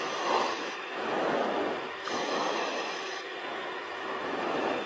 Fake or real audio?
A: fake